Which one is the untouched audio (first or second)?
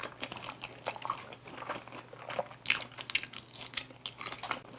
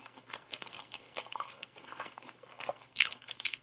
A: first